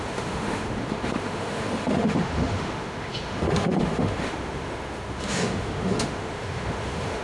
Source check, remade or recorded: remade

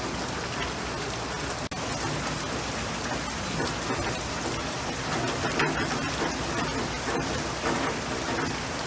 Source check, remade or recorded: recorded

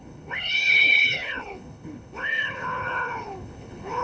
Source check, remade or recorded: remade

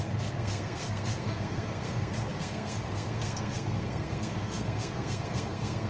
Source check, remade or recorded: remade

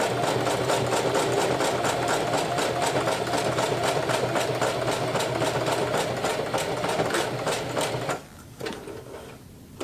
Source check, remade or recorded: recorded